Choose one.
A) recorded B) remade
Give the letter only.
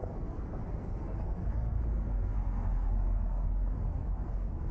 B